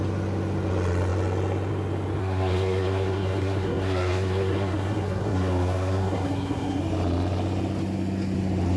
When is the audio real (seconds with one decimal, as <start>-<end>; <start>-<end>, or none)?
0.0-2.2; 6.8-8.8